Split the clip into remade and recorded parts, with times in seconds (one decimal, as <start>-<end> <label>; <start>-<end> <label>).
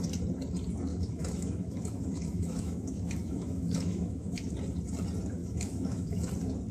0.0-0.9 recorded; 0.9-4.5 remade; 4.5-5.4 recorded; 5.4-6.3 remade; 6.3-6.7 recorded